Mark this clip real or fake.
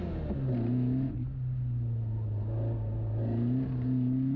real